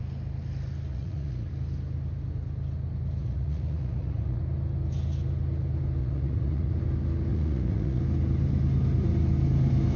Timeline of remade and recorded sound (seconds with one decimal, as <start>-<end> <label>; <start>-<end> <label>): 0.0-0.9 recorded; 0.9-1.5 remade; 1.5-3.2 recorded; 3.2-4.4 remade; 4.4-6.0 recorded; 6.0-6.7 remade; 6.7-7.3 recorded; 7.3-8.0 remade; 8.0-10.0 recorded